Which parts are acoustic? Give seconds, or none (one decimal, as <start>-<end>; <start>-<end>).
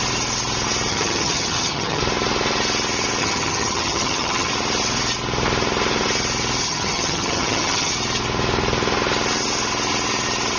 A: 0.0-0.9; 2.0-3.2; 4.5-6.6; 7.9-10.6